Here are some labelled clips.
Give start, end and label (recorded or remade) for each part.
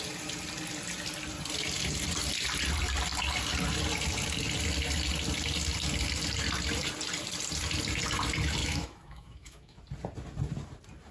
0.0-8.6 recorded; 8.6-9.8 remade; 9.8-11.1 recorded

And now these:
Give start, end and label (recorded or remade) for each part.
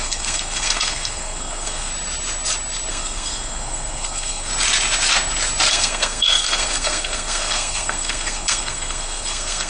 0.0-1.9 remade; 1.9-2.9 recorded; 2.9-4.5 remade; 4.5-5.7 recorded; 5.7-9.7 remade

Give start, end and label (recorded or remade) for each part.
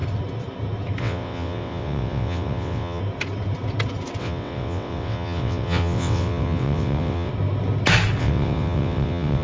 0.0-1.0 recorded; 1.0-3.0 remade; 3.0-4.2 recorded; 4.2-7.3 remade; 7.3-8.2 recorded; 8.2-9.4 remade